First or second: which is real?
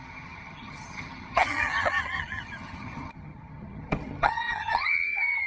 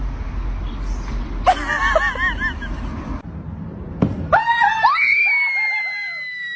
second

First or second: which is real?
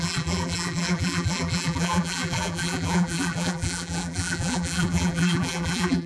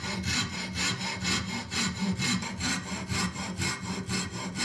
second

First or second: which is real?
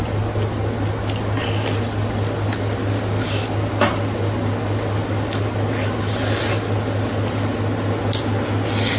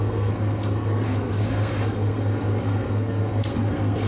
first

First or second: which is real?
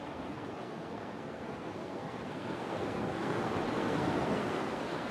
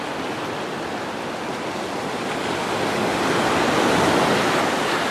second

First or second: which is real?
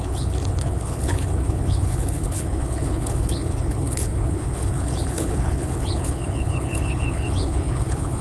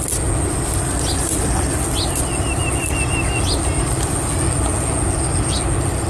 second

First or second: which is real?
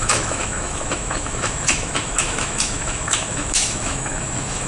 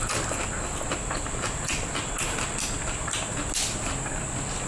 second